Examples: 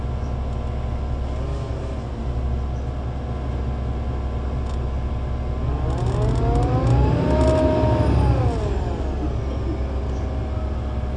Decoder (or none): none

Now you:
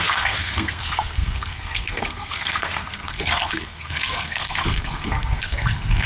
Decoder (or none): codec, SNAC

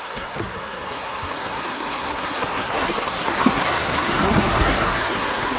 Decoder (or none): codec, SNAC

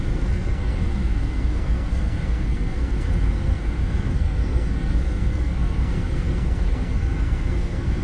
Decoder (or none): codec, SNAC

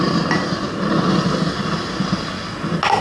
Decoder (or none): none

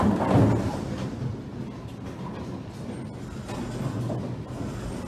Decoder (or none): none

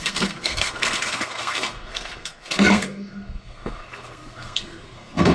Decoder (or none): codec, SNAC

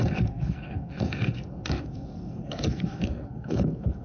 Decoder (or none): codec, SNAC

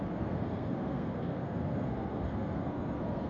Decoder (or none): codec, SNAC